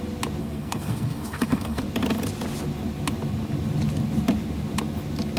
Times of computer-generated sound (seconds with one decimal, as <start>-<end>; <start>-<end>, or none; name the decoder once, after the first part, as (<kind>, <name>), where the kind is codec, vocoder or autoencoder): 0.4-1.8 (codec, SNAC)

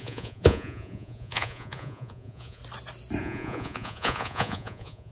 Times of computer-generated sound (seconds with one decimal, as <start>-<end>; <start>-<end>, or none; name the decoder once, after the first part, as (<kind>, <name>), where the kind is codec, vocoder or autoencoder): 0.0-2.6 (vocoder, Vocos); 3.2-5.1

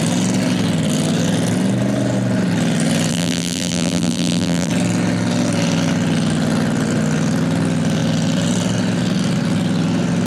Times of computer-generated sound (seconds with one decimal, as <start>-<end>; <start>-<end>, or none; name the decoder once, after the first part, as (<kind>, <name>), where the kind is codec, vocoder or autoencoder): 3.1-4.7 (vocoder, BigVGAN v2)

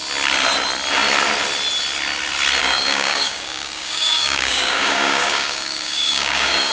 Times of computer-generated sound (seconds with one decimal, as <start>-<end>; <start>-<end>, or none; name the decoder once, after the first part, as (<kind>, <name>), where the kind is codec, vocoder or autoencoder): 2.6-6.7 (codec, DAC)

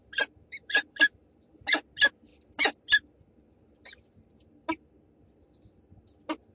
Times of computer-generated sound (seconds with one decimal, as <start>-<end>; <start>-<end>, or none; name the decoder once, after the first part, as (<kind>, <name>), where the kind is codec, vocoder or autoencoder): 0.0-1.6 (vocoder, BigVGAN v2)

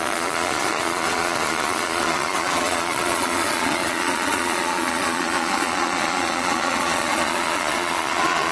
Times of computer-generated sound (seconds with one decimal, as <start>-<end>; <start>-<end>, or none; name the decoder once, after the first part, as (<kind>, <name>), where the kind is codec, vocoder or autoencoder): 0.0-8.5 (vocoder, Vocos)

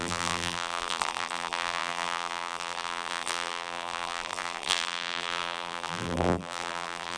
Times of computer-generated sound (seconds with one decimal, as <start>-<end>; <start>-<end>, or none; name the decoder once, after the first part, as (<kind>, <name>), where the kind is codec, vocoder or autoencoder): 0.0-7.2 (vocoder, BigVGAN v2)

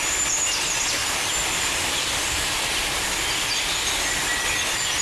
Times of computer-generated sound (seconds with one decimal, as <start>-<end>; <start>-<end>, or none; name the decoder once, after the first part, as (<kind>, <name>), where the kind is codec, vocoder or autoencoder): 1.0-3.1 (vocoder, BigVGAN v2)